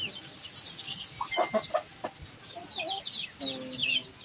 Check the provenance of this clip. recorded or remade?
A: recorded